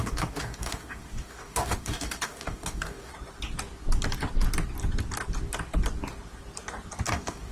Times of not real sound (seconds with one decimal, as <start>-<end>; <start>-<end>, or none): 0.0-3.1; 7.1-7.5